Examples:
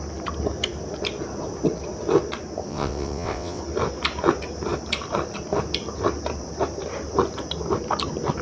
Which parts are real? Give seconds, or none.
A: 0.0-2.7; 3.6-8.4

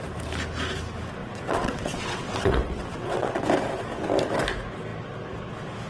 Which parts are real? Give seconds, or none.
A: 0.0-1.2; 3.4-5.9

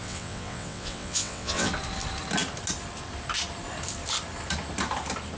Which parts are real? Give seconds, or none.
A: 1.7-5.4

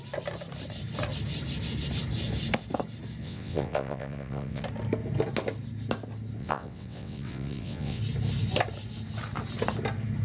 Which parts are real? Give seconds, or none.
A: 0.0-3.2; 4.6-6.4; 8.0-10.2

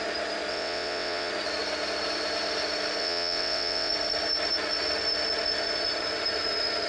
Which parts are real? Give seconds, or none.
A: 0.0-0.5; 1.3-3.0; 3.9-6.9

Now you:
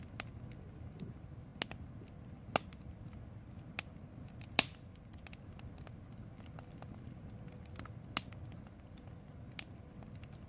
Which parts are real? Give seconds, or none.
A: 0.0-10.5

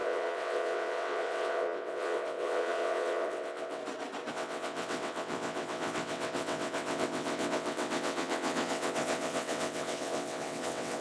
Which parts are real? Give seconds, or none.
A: 3.8-4.3

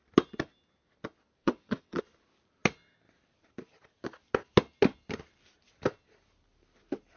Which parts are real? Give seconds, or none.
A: 0.0-1.4; 2.0-7.2